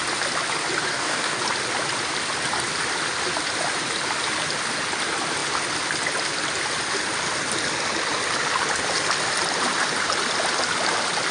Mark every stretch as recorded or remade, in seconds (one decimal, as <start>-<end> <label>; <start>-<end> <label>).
0.0-0.9 recorded; 0.9-1.4 remade; 1.4-11.3 recorded